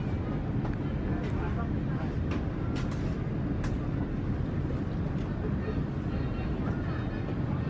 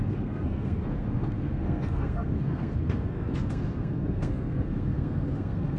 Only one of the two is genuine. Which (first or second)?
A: first